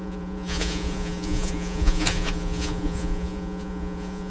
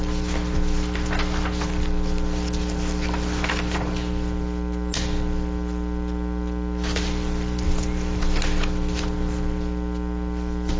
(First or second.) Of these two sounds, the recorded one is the second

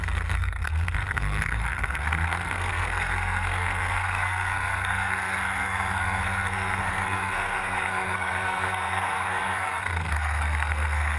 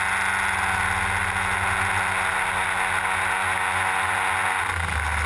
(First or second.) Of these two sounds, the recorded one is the second